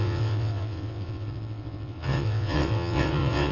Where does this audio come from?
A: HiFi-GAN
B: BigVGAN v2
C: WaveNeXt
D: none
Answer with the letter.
C